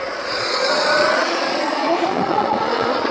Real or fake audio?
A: fake